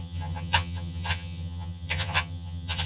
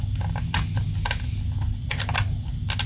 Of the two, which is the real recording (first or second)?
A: second